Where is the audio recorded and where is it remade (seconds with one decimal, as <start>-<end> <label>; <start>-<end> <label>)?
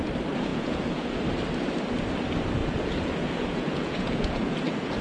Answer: 0.0-0.5 recorded; 0.5-1.2 remade; 1.2-2.6 recorded; 2.6-5.0 remade